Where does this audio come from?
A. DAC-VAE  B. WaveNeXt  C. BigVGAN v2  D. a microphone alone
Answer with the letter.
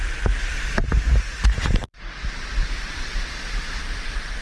C